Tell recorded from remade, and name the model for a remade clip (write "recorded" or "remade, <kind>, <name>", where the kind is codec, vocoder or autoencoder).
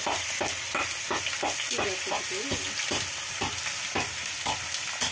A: recorded